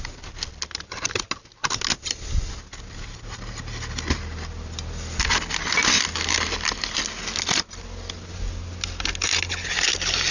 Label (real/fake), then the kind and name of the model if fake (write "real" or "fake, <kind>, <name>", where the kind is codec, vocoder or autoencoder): real